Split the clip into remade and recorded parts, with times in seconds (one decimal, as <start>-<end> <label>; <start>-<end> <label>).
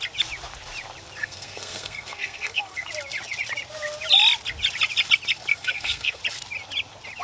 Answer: 0.0-1.2 recorded; 1.2-2.9 remade; 2.9-5.5 recorded; 5.5-6.2 remade; 6.2-7.2 recorded